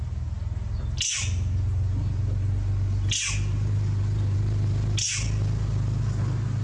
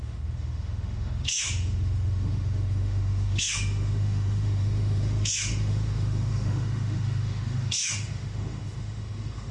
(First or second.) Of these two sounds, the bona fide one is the first